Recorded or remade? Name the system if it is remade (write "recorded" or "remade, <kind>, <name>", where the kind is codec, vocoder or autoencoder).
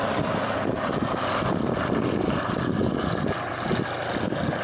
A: recorded